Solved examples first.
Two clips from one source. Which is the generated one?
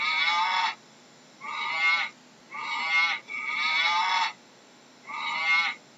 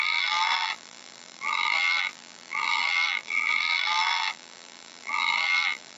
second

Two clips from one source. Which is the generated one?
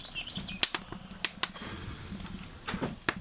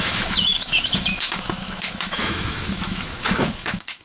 second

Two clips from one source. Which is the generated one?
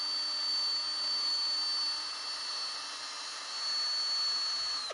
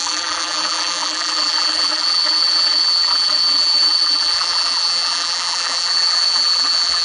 second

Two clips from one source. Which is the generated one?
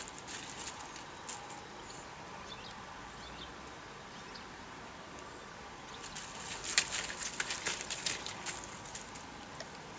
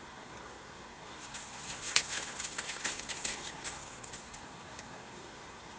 second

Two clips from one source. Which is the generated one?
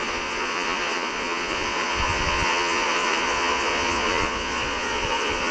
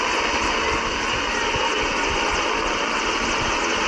first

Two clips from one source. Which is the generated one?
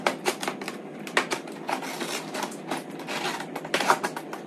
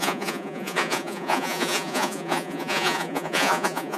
second